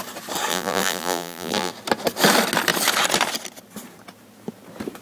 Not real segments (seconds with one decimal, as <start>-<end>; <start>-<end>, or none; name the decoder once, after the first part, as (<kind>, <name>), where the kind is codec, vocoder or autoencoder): 0.5-1.7 (vocoder, BigVGAN v2)